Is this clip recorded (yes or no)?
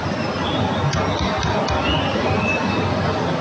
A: yes